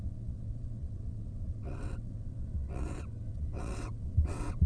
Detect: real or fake fake